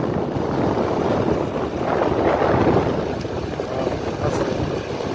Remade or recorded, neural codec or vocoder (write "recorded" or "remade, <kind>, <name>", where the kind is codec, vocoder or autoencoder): recorded